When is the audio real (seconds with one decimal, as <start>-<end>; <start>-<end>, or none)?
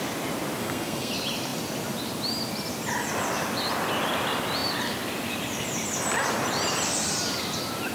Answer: 0.0-0.6; 1.1-7.9